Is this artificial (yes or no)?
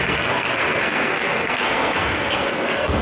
yes